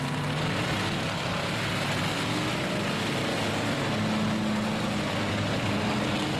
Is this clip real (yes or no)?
yes